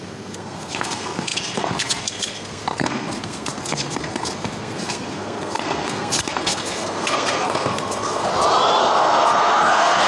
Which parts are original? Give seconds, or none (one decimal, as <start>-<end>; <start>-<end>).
8.3-8.8